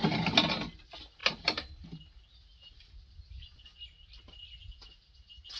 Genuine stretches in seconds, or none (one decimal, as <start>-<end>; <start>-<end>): 0.0-5.6